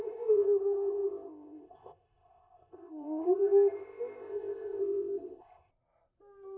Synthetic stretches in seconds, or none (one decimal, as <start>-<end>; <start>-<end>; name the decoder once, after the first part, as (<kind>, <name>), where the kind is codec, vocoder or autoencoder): 0.0-5.7 (codec, ZipCodec)